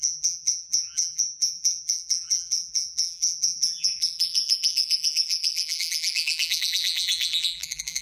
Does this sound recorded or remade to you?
remade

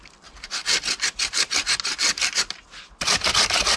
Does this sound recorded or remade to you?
recorded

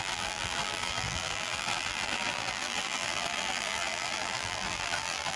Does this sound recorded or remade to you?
remade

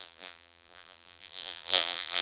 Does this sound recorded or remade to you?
remade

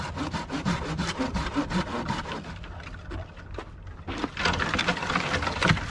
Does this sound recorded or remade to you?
recorded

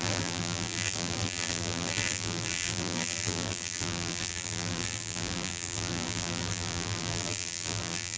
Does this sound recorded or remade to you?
remade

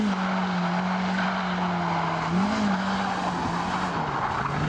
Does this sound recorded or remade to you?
recorded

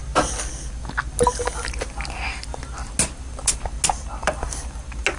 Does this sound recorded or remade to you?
recorded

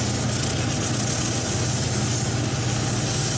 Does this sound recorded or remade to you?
recorded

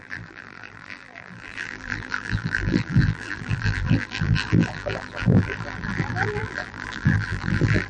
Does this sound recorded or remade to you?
remade